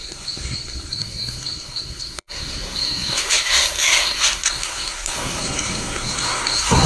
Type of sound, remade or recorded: remade